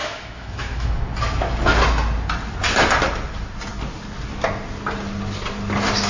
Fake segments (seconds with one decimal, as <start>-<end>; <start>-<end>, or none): 0.0-1.0